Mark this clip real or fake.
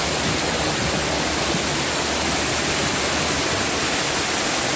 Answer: real